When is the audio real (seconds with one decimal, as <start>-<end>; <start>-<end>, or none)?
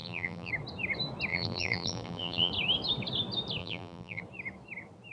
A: 0.5-1.3; 2.5-3.6; 4.2-5.1